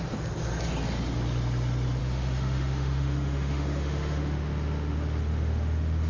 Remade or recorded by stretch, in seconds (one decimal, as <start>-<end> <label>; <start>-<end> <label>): 0.0-2.0 recorded; 2.0-6.1 remade